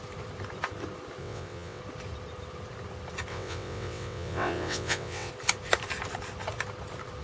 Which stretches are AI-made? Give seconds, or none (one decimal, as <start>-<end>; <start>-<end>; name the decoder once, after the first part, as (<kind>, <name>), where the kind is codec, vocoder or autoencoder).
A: 1.2-1.8 (vocoder, WaveNeXt); 3.3-5.3